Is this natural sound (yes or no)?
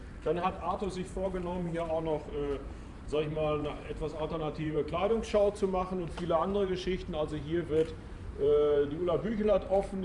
no